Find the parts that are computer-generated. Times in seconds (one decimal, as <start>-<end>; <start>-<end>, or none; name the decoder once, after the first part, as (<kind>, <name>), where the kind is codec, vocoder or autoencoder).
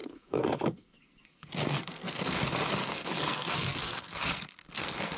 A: 0.0-2.4 (codec, SNAC); 2.8-5.2